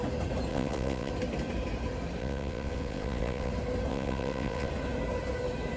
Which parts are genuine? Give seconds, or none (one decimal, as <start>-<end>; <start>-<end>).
0.0-0.5; 1.1-2.2; 3.5-3.9; 4.7-5.8